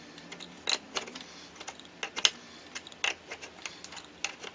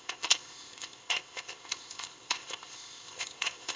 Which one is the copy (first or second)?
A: second